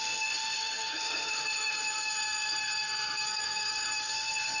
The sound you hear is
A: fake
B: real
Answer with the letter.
A